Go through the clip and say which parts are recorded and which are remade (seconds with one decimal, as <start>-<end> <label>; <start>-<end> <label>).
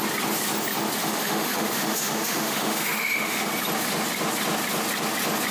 0.0-1.0 recorded; 1.0-3.5 remade; 3.5-5.5 recorded